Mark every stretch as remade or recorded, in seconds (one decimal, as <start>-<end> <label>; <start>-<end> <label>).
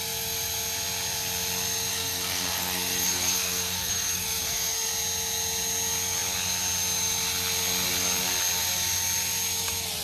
0.0-1.9 recorded; 1.9-4.9 remade; 4.9-10.0 recorded